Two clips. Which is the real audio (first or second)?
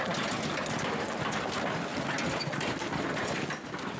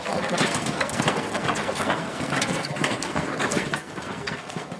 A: first